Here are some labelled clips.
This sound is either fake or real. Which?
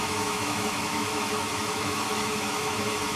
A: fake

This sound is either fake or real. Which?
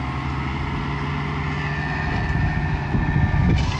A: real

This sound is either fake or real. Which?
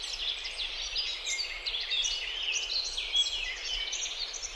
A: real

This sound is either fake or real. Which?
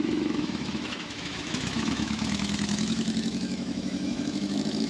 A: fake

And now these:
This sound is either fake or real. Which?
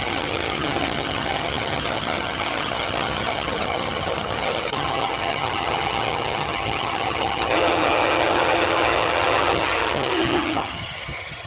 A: fake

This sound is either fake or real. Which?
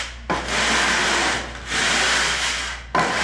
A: real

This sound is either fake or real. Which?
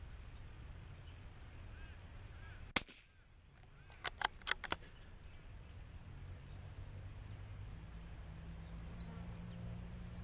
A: real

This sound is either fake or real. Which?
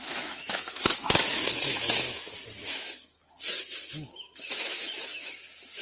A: fake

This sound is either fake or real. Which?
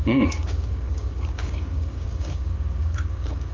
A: fake